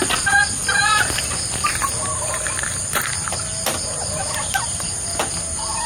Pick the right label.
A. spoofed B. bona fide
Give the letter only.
B